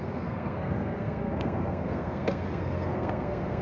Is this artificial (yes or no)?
yes